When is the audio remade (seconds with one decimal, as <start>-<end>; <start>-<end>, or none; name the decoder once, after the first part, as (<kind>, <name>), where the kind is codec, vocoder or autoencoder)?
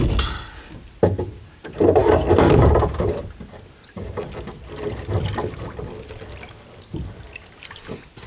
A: none